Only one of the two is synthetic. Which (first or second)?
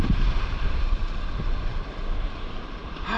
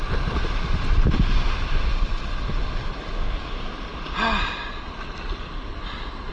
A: first